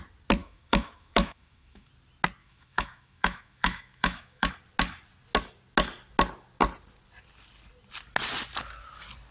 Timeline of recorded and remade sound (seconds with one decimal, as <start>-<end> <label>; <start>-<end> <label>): 0.0-0.4 recorded; 0.4-1.9 remade; 1.9-2.4 recorded; 2.4-4.5 remade; 4.5-9.3 recorded